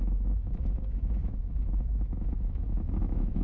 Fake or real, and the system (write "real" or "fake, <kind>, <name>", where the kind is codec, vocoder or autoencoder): fake, autoencoder, DAC-VAE